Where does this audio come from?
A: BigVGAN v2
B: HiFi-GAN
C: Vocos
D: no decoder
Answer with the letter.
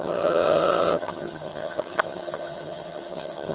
B